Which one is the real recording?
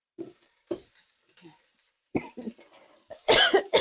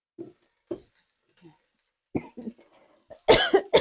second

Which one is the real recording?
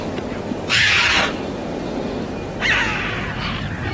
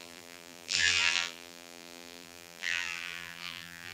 first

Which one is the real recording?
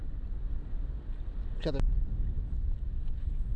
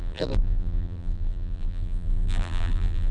first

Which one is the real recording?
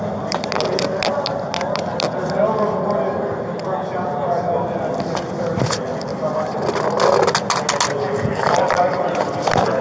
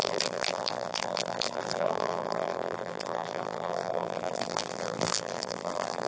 first